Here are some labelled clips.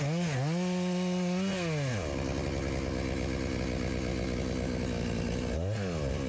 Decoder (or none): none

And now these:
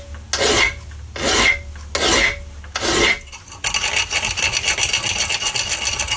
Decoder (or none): none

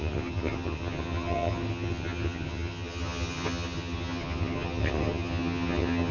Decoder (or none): vocoder, HiFi-GAN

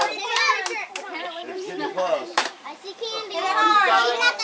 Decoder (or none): vocoder, BigVGAN v2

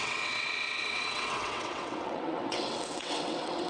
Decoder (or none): vocoder, WaveNeXt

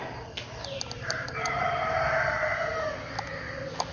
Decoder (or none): none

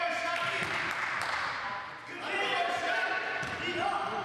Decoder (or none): none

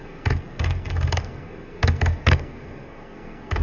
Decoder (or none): codec, SNAC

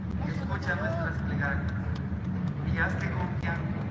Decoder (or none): none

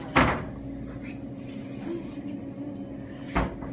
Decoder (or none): none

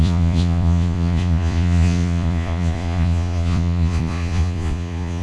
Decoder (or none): vocoder, Vocos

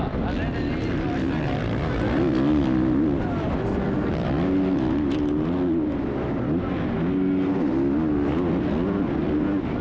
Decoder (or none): none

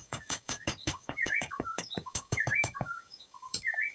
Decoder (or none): codec, DAC